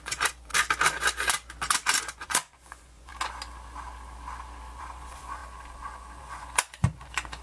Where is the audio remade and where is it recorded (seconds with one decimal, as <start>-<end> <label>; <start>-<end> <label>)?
0.0-0.5 remade; 0.5-2.0 recorded; 2.0-3.1 remade; 3.1-4.8 recorded; 4.8-5.4 remade; 5.4-6.2 recorded; 6.2-7.4 remade